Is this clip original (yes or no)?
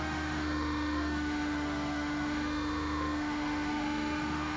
no